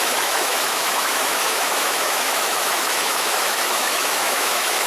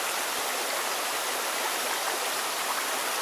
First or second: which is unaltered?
second